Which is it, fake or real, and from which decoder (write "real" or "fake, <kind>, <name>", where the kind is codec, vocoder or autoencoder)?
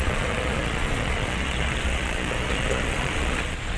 fake, vocoder, Vocos